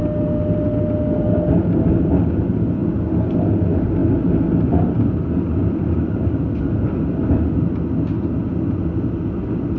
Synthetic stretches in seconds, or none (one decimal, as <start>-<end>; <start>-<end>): none